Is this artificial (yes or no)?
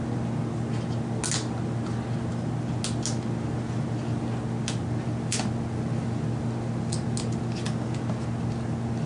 no